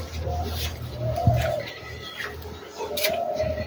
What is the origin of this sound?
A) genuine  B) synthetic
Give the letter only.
A